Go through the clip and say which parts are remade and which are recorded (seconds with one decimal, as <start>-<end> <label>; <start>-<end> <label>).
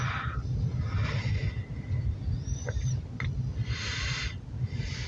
0.0-5.1 recorded